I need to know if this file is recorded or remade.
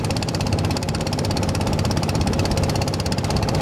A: remade